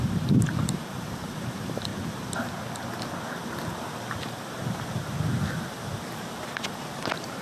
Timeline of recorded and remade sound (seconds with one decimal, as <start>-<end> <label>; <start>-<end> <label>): 0.0-1.9 remade; 1.9-6.3 recorded; 6.3-7.4 remade